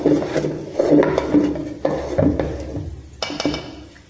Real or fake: real